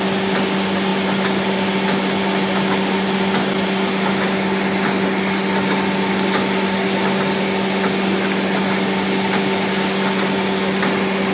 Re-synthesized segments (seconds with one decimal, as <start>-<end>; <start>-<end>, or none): none